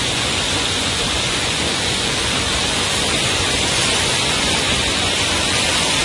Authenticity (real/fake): fake